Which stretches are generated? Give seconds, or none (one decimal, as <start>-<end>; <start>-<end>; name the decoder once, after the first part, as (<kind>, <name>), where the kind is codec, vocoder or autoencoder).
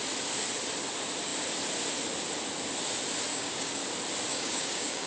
3.3-3.8 (codec, DAC); 4.3-5.1